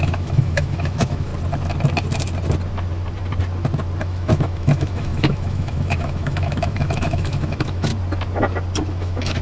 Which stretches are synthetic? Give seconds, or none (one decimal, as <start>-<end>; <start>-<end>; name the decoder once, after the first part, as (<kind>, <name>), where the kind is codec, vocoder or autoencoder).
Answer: 0.0-1.3 (autoencoder, DAC-VAE); 4.0-7.9; 8.8-9.4

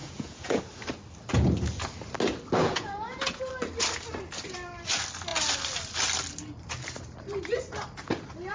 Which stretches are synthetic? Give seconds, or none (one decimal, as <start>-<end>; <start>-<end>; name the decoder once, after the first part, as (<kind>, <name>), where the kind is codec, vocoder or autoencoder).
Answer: 0.0-0.6 (vocoder, Vocos); 2.6-3.5

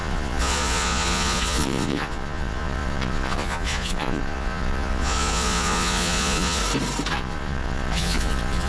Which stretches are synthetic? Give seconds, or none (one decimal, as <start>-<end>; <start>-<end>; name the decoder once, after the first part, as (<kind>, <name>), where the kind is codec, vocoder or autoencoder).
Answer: 0.0-6.6 (vocoder, Vocos); 7.1-8.7

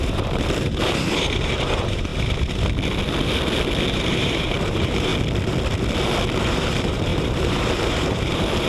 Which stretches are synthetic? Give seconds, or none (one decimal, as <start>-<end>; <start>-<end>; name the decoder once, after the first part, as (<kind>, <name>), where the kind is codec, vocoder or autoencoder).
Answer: 0.0-2.1 (vocoder, BigVGAN v2); 3.9-5.1; 6.4-8.7

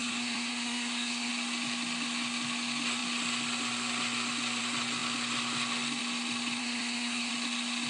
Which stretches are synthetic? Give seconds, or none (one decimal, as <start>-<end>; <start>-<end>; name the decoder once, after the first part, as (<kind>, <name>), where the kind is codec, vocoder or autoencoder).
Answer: 0.0-1.3 (codec, SNAC); 6.6-7.3